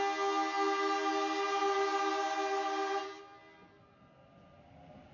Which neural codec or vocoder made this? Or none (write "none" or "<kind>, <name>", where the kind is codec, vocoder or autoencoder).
none